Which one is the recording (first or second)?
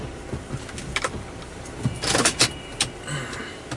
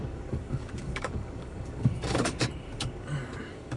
first